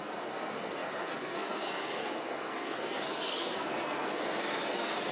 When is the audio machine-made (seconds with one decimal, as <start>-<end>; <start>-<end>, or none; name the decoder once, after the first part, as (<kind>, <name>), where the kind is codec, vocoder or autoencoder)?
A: 0.0-5.1 (codec, SNAC)